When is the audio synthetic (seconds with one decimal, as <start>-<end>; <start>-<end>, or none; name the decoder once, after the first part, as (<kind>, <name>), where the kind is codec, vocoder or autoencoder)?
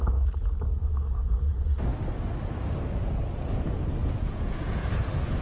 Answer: 4.0-5.0 (vocoder, Vocos)